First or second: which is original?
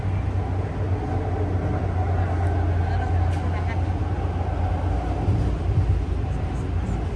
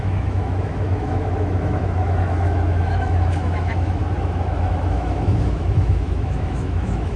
first